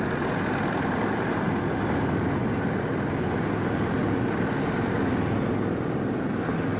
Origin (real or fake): real